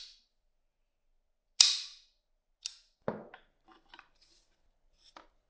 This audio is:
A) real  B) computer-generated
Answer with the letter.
A